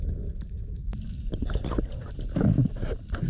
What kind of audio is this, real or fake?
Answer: real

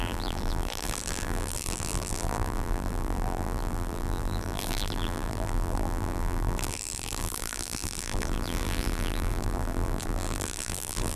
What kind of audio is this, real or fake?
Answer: fake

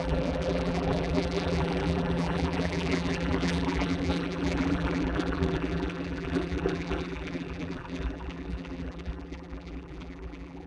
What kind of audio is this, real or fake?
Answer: fake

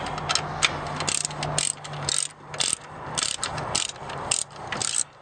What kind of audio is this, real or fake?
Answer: real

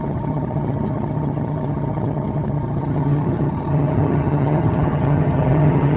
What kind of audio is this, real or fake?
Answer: fake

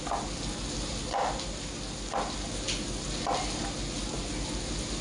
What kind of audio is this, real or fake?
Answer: real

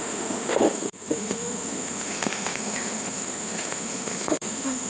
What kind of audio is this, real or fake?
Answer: fake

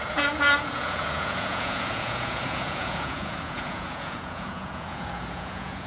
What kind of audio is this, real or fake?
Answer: fake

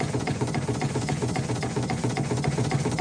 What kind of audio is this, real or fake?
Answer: fake